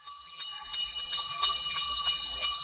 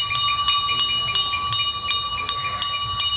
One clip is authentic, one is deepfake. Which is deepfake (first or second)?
first